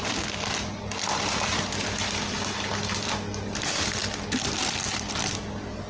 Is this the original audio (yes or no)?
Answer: yes